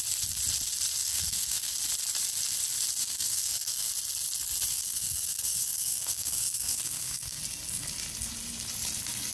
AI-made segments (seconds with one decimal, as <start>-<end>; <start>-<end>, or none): 1.0-1.7; 3.0-3.9; 4.7-7.4